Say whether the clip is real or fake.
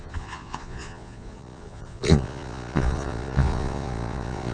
fake